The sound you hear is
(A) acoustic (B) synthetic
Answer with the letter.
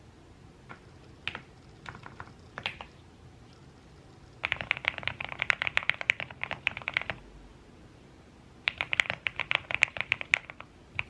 A